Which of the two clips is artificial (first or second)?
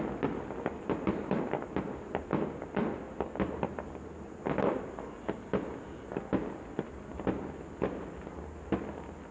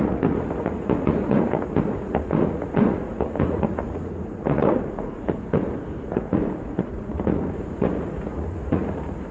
second